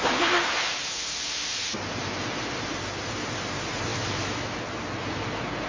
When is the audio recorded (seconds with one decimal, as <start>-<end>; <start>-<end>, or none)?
0.0-3.9; 4.6-5.7

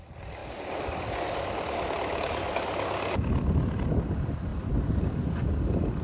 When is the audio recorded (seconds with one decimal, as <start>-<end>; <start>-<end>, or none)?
0.0-6.0

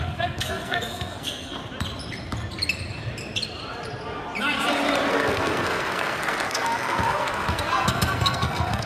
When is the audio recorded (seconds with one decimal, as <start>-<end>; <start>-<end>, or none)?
1.6-5.1

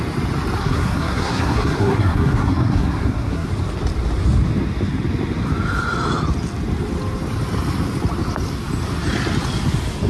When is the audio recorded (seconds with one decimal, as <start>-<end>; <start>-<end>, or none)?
0.0-0.6; 3.5-10.1

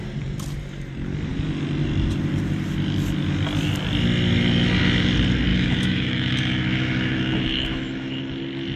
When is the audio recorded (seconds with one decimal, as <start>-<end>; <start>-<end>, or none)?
0.0-5.5; 8.2-8.8

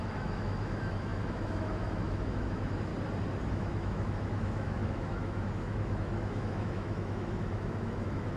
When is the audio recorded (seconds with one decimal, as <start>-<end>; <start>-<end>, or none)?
2.9-3.5

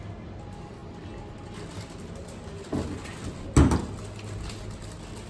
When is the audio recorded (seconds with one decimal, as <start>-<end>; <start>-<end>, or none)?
0.0-5.3